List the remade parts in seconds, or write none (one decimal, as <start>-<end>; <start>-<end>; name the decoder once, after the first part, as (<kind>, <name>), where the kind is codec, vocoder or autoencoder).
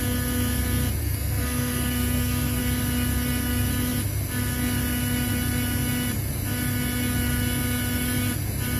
1.0-2.6 (codec, SNAC)